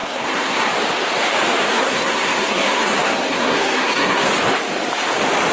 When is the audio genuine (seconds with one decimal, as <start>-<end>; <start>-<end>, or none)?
0.7-1.7; 4.3-5.5